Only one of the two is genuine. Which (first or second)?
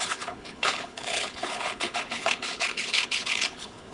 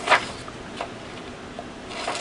second